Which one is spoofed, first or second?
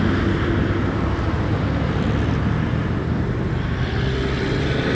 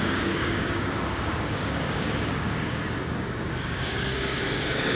second